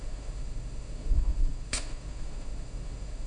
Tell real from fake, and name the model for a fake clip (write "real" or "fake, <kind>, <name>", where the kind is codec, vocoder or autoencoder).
fake, autoencoder, DAC-VAE